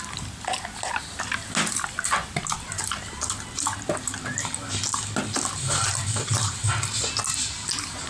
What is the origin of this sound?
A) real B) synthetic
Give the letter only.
A